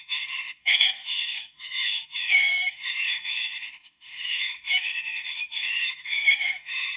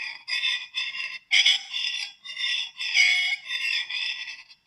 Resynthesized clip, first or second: first